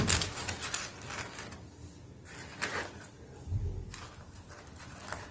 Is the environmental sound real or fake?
real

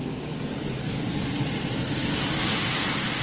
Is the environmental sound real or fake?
real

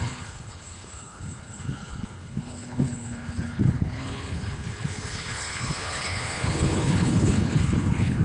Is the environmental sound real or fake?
fake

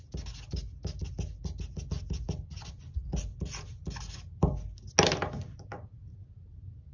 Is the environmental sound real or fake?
real